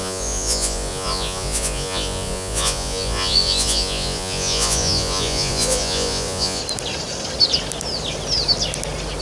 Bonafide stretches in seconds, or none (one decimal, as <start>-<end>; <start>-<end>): 6.6-9.2